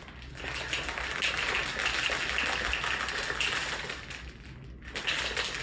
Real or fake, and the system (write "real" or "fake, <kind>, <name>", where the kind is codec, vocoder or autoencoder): real